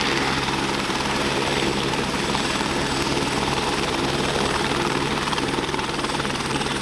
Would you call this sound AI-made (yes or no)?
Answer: yes